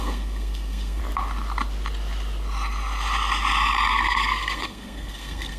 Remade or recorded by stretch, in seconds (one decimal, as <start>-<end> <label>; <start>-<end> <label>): 0.0-1.0 remade; 1.0-3.9 recorded; 3.9-5.6 remade